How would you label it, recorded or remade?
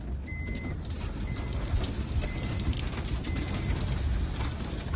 recorded